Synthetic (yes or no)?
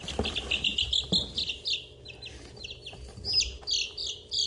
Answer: no